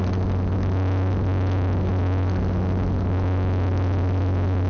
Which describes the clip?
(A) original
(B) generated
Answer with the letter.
A